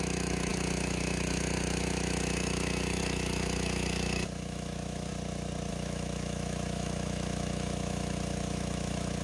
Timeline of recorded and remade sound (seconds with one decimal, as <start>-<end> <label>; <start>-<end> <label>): 0.0-5.1 remade; 5.1-5.7 recorded; 5.7-9.2 remade